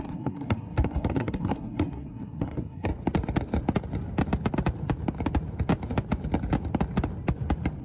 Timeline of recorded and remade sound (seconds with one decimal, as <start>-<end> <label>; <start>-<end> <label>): 0.0-2.9 remade; 2.9-7.8 recorded